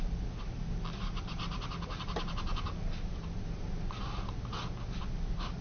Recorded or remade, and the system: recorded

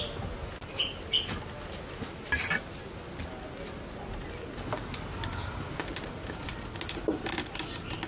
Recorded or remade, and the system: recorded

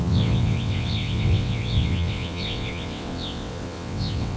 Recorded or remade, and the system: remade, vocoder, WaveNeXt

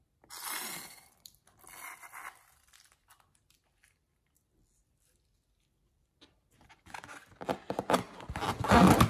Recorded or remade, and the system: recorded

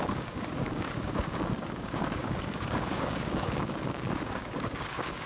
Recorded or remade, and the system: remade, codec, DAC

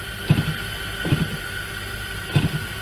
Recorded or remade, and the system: recorded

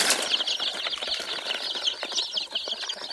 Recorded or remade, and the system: recorded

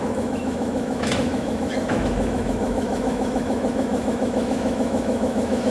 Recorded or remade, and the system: remade, autoencoder, DAC-VAE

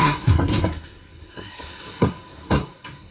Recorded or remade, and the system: remade, codec, SNAC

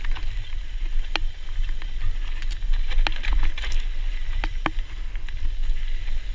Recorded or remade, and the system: recorded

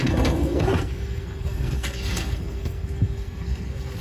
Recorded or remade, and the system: remade, codec, SNAC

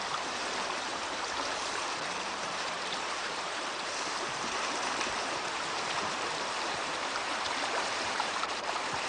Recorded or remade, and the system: remade, vocoder, BigVGAN v2